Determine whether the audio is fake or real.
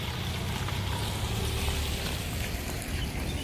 real